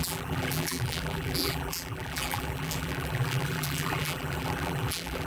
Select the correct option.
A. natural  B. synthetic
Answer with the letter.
B